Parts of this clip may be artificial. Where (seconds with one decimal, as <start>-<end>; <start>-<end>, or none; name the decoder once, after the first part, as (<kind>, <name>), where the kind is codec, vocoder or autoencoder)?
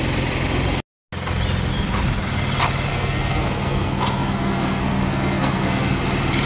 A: 2.9-6.0 (codec, SNAC)